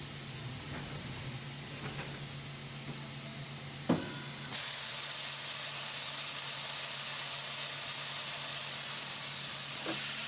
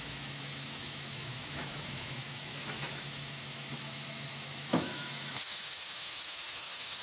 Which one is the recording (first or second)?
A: first